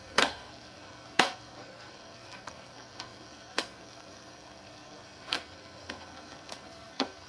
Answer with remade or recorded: remade